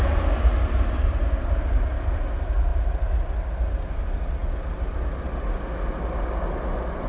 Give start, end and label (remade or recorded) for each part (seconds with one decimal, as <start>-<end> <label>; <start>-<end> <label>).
0.0-7.1 recorded